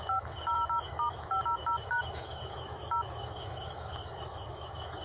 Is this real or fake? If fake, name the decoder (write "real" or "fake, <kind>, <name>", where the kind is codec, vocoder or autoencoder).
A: fake, autoencoder, DAC-VAE